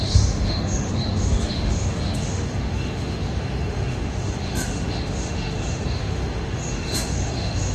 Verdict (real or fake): fake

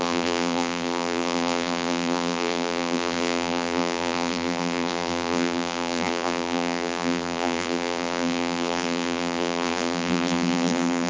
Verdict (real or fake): fake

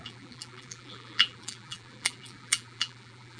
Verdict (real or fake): fake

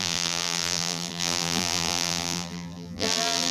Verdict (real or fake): fake